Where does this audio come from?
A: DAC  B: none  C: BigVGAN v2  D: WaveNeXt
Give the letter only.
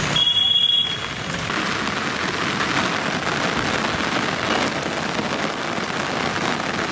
B